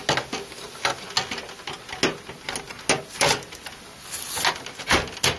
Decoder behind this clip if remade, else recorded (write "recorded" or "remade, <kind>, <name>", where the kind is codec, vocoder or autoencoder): recorded